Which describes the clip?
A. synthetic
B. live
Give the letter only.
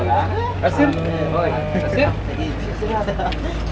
B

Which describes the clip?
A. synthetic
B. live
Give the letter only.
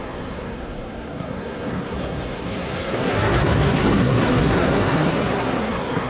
A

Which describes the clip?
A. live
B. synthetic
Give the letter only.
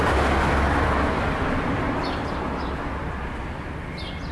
A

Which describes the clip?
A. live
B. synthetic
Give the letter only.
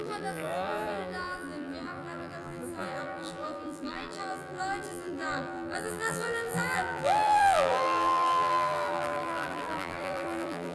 B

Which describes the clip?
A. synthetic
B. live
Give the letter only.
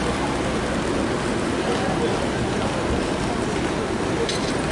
B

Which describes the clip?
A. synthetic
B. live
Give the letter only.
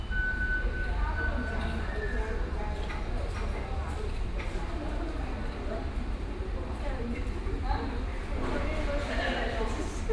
B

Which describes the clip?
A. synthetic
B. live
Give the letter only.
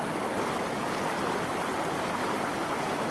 B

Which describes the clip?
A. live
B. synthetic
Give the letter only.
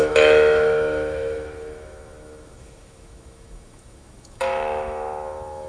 B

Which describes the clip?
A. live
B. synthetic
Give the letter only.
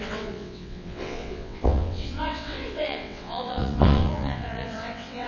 B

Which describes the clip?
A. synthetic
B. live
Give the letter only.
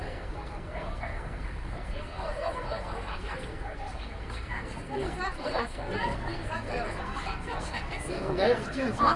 A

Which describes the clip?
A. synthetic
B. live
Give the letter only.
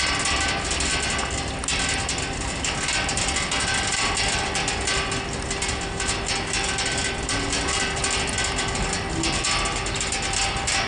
B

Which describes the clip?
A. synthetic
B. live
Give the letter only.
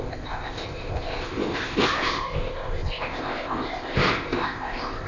A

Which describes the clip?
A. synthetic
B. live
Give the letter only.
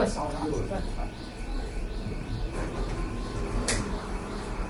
A